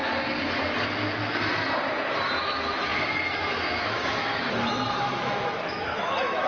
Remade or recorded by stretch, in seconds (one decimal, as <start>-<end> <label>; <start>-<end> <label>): 0.0-2.4 recorded; 2.4-6.5 remade